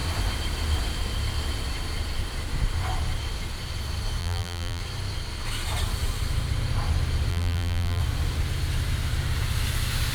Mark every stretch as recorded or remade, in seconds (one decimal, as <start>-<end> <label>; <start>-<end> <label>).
0.0-4.2 recorded; 4.2-4.8 remade; 4.8-7.3 recorded; 7.3-8.0 remade; 8.0-10.1 recorded